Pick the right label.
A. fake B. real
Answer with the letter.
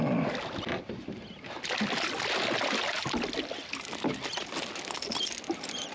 B